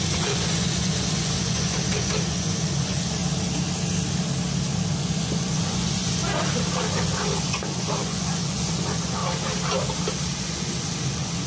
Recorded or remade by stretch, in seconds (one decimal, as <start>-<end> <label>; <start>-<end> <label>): 0.0-3.2 remade; 3.2-5.0 recorded; 5.0-6.2 remade; 6.2-7.0 recorded; 7.0-9.2 remade; 9.2-10.4 recorded; 10.4-11.5 remade